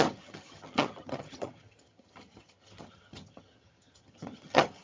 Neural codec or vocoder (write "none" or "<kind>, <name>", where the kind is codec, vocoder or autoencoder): vocoder, HiFi-GAN